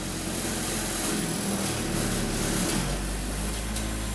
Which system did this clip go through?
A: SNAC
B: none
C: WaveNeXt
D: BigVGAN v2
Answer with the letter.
B